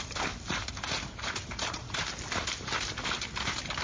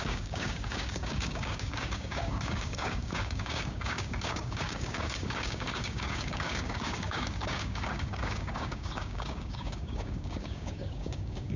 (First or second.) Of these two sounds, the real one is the first